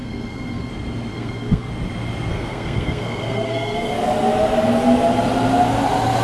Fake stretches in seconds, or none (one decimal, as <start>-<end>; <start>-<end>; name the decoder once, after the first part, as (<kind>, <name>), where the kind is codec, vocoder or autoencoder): 0.0-0.7 (codec, SNAC); 1.1-1.7; 2.3-3.9